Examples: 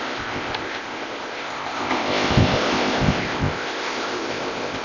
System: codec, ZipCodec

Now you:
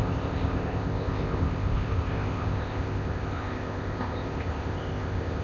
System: codec, ZipCodec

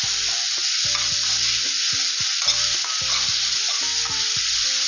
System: none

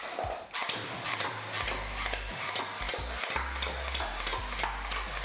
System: none